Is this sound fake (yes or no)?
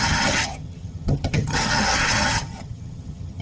yes